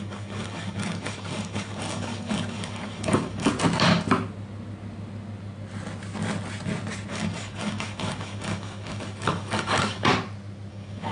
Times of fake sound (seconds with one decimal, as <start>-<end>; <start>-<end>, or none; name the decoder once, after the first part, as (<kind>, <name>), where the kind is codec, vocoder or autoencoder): 0.0-3.5 (codec, DAC); 7.1-10.1; 10.7-11.1